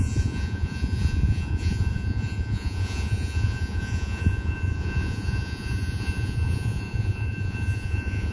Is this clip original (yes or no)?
no